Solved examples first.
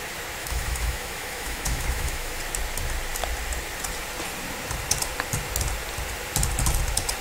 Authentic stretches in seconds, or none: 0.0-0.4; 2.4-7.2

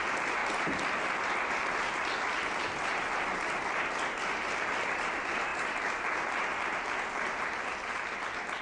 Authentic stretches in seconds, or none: 0.0-8.6

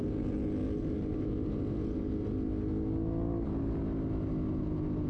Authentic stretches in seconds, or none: 0.0-5.1